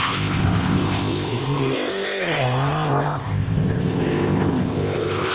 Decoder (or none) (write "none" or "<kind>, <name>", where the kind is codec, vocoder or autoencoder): codec, ZipCodec